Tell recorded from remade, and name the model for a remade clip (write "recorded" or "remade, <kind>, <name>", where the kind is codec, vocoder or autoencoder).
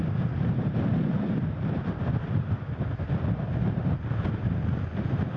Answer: recorded